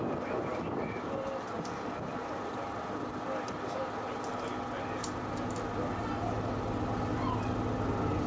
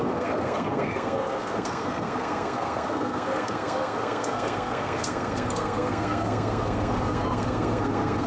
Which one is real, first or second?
first